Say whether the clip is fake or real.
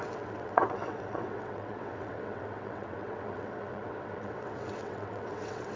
fake